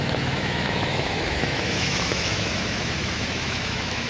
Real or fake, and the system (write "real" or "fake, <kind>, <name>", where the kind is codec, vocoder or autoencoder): fake, autoencoder, DAC-VAE